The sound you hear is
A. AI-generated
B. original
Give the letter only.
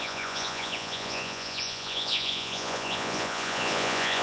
A